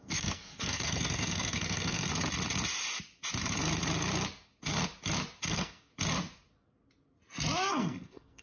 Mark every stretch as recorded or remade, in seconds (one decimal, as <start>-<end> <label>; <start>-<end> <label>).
0.0-2.1 remade; 2.1-5.5 recorded; 5.5-5.9 remade; 5.9-7.7 recorded; 7.7-8.4 remade